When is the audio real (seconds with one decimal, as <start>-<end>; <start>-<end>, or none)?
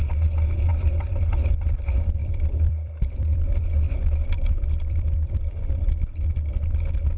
0.0-0.7; 1.3-2.2; 6.5-7.2